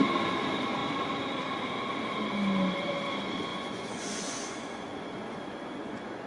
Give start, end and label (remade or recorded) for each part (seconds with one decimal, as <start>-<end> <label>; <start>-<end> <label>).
0.0-3.5 recorded; 3.5-6.3 remade